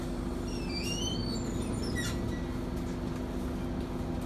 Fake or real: real